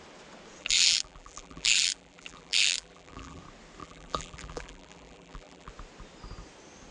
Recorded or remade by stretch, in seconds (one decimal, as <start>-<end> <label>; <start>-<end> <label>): 0.0-0.6 recorded; 0.6-3.4 remade; 3.4-3.8 recorded; 3.8-5.7 remade; 5.7-6.9 recorded